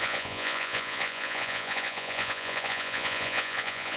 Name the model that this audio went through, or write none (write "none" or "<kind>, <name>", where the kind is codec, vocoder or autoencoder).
vocoder, Vocos